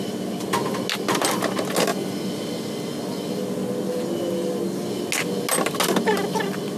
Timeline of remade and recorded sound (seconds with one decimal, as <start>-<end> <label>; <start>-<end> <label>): 0.0-6.8 recorded